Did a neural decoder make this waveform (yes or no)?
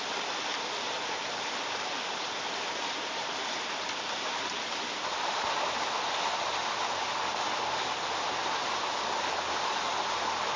no